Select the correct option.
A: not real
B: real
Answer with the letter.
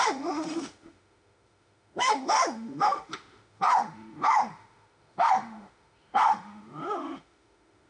A